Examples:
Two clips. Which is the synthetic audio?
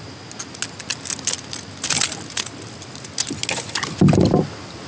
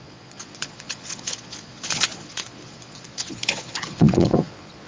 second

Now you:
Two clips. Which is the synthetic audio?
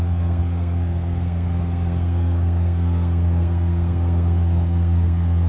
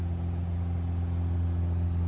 first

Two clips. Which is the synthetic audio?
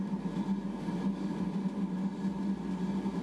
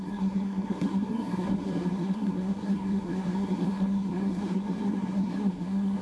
second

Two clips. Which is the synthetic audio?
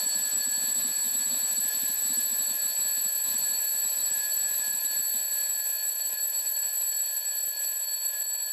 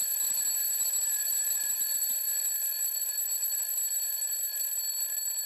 first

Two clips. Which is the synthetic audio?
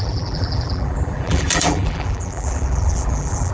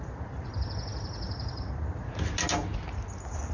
first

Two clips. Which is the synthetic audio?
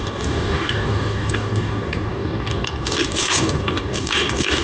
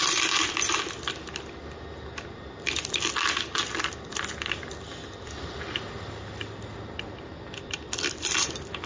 first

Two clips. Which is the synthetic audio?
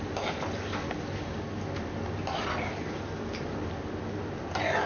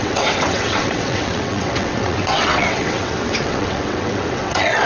second